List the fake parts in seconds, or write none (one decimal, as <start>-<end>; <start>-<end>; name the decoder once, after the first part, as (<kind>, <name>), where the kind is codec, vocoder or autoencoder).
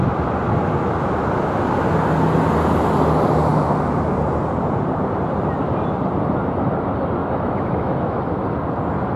7.2-8.3 (autoencoder, DAC-VAE)